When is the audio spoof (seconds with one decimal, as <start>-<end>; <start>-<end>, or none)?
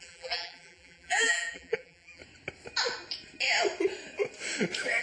0.0-2.2